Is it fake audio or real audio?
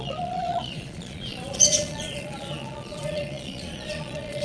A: fake